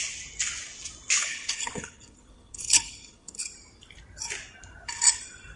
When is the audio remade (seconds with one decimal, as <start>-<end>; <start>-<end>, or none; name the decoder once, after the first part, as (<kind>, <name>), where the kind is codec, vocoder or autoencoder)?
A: 1.2-3.4 (codec, HILCodec)